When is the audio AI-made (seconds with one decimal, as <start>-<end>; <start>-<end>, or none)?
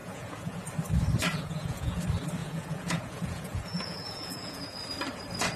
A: 0.0-0.6; 1.3-2.0; 2.4-4.8